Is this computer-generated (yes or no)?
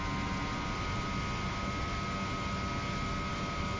no